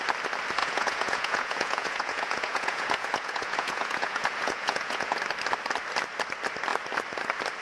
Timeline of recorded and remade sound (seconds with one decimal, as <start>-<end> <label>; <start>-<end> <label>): 0.0-0.6 recorded; 0.6-5.2 remade; 5.2-7.6 recorded